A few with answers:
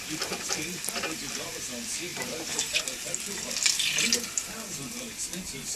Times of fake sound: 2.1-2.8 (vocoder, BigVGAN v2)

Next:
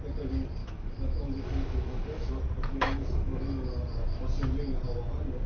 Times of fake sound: 0.6-2.3 (autoencoder, DAC-VAE); 2.7-3.7

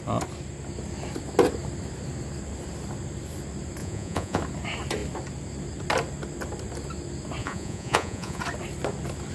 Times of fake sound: 3.8-4.4 (vocoder, Vocos); 7.4-8.4

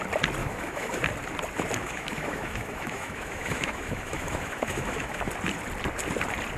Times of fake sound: 0.4-1.0 (autoencoder, DAC-VAE); 1.8-5.3

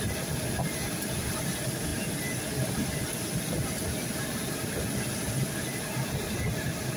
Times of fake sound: none

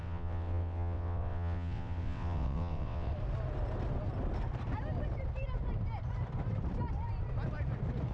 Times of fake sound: 0.0-3.1 (vocoder, WaveNeXt)

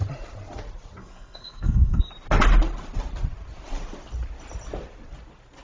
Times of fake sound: 1.0-2.1 (codec, SNAC)